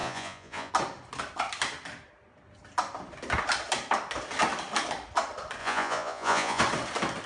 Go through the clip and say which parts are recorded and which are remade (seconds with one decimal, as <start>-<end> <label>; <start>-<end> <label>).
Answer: 0.0-0.7 remade; 0.7-5.6 recorded; 5.6-6.6 remade; 6.6-7.3 recorded